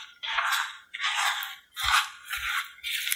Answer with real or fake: real